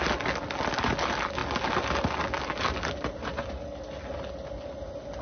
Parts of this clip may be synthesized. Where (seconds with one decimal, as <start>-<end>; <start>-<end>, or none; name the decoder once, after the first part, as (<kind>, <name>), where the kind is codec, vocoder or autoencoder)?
none